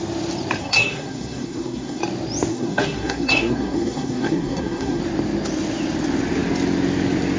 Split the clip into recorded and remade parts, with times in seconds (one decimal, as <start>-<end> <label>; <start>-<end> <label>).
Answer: 0.0-0.6 recorded; 0.6-2.0 remade; 2.0-2.5 recorded; 2.5-5.0 remade; 5.0-7.4 recorded